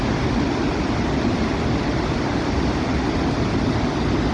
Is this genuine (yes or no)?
yes